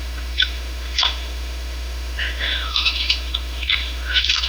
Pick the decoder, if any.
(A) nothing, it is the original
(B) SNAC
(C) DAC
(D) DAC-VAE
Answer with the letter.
D